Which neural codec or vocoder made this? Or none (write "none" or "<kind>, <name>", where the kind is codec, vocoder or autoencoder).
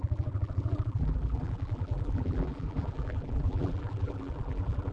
vocoder, BigVGAN v2